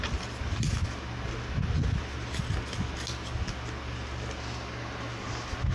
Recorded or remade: recorded